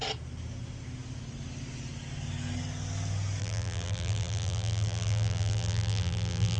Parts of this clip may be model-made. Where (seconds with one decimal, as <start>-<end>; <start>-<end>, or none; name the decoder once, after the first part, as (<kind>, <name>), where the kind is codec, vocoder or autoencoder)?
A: 3.4-6.6 (vocoder, BigVGAN v2)